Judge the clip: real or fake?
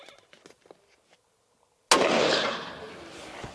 real